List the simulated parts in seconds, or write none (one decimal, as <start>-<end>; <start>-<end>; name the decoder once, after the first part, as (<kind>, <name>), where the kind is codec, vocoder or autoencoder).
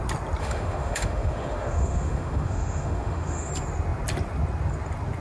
0.4-3.5 (autoencoder, DAC-VAE)